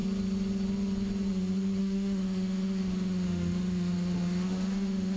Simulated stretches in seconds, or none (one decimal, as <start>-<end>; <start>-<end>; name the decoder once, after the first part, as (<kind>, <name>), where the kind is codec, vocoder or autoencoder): 1.8-5.2 (autoencoder, DAC-VAE)